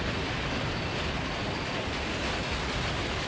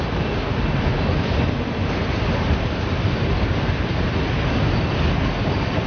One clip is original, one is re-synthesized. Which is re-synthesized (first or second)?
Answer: first